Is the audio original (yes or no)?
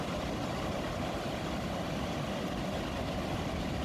yes